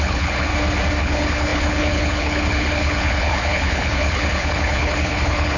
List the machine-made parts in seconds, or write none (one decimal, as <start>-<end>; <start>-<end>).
0.0-0.5; 1.0-5.6

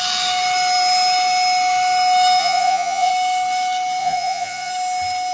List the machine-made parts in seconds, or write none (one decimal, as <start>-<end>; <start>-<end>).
2.4-3.1; 4.0-4.7

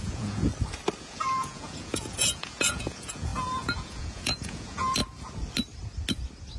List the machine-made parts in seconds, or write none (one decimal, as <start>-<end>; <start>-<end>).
0.0-0.5; 1.0-5.0

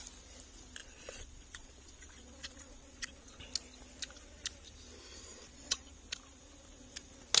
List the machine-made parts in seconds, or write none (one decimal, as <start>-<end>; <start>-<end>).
0.8-3.4; 5.3-5.9